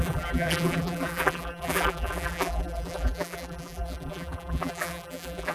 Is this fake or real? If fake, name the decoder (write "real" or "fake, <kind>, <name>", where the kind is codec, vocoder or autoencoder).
fake, vocoder, BigVGAN v2